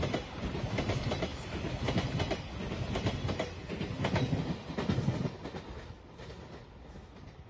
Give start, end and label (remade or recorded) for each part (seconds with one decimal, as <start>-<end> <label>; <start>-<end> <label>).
0.0-7.5 recorded